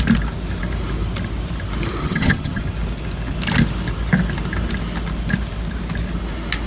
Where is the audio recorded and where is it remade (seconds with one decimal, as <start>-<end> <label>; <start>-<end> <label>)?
0.0-2.0 recorded; 2.0-2.6 remade; 2.6-6.7 recorded

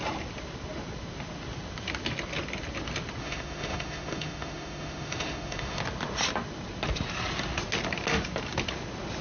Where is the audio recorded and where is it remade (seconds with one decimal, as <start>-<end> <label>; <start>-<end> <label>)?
0.0-3.2 recorded; 3.2-5.8 remade; 5.8-9.2 recorded

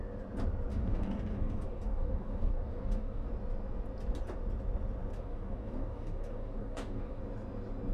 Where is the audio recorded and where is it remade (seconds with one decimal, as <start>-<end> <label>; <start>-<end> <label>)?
0.0-0.7 recorded; 0.7-3.3 remade; 3.3-5.1 recorded; 5.1-7.2 remade; 7.2-7.9 recorded

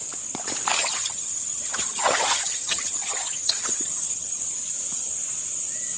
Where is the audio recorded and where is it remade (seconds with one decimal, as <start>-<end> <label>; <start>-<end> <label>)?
0.0-0.8 recorded; 0.8-4.4 remade; 4.4-6.0 recorded

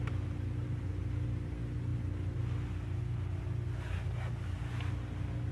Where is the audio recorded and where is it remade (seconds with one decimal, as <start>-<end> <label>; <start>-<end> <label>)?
0.0-5.5 recorded

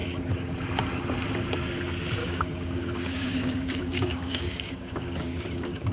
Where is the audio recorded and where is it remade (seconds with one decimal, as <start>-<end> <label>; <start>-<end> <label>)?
0.0-0.5 remade; 0.5-2.2 recorded; 2.2-5.9 remade

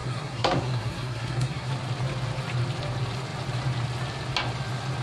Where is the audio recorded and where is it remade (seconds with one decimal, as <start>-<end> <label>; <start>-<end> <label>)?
0.0-1.7 remade; 1.7-5.0 recorded

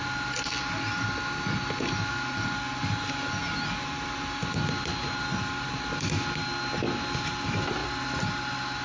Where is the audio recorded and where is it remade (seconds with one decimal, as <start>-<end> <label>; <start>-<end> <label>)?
0.0-8.8 recorded